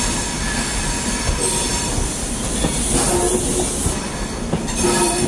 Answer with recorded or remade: recorded